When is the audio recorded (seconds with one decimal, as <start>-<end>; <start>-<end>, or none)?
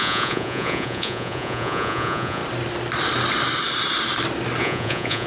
2.4-4.6